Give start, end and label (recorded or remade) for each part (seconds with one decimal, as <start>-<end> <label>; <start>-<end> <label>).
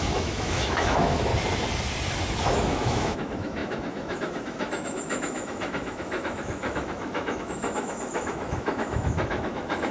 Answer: 0.0-1.3 remade; 1.3-2.4 recorded; 2.4-9.9 remade